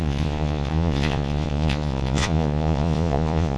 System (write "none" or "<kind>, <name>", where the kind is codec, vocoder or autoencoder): vocoder, Vocos